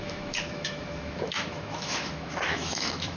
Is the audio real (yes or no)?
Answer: no